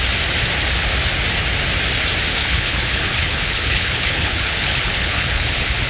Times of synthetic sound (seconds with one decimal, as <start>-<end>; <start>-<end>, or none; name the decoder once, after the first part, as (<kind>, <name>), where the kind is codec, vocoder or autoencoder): 2.4-5.9 (codec, HILCodec)